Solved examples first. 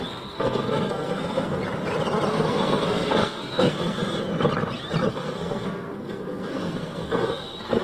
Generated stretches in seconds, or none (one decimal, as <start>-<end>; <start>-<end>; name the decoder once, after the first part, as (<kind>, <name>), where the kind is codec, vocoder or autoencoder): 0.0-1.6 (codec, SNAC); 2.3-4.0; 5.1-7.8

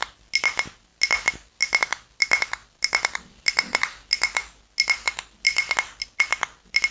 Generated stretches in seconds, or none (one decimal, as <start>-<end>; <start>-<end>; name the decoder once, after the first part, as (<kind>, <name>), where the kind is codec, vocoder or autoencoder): none

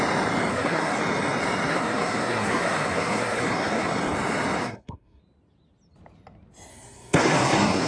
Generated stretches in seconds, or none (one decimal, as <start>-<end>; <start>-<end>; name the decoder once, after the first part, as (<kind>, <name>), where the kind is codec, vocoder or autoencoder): 0.5-1.0 (codec, SNAC); 1.7-3.9; 4.6-5.2; 6.7-7.9

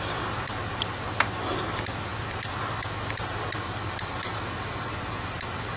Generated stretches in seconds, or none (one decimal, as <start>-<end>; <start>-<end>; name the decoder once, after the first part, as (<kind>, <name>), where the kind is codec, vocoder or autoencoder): none

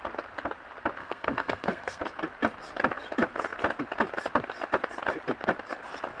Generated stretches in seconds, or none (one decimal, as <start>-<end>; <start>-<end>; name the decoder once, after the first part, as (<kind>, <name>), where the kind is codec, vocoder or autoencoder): 1.0-2.0 (codec, SNAC)

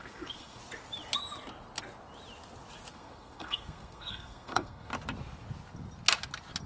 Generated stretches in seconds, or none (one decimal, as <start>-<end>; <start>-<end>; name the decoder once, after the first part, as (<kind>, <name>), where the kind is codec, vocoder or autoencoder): 0.0-0.6 (codec, SNAC); 2.9-4.9